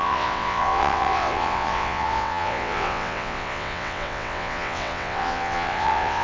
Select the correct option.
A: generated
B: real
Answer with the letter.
A